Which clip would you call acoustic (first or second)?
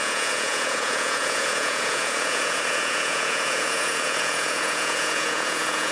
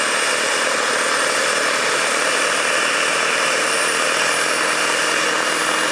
second